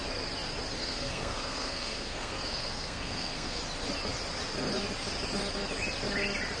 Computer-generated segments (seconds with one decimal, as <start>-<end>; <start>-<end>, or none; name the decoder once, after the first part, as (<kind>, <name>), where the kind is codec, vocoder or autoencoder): 0.8-3.6 (codec, SNAC)